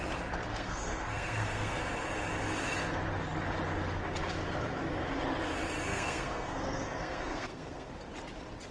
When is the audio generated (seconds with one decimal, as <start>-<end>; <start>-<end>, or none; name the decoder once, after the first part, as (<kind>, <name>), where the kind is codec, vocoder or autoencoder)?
0.5-1.8 (codec, SNAC); 5.9-7.9